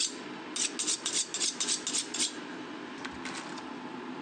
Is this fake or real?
real